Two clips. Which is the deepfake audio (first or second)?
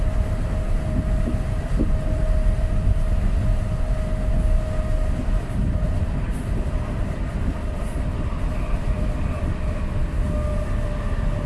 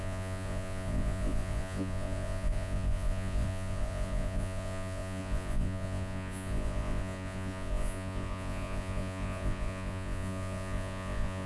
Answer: second